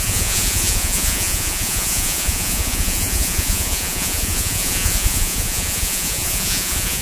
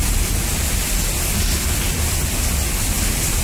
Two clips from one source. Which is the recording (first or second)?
second